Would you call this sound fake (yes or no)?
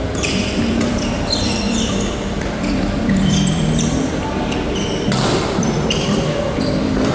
yes